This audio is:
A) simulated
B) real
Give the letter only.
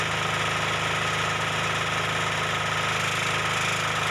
B